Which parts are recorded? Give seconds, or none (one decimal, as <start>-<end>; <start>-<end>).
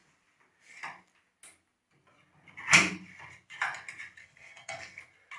0.0-4.2; 5.0-5.4